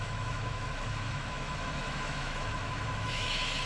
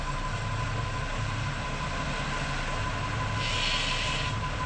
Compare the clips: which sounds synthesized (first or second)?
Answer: first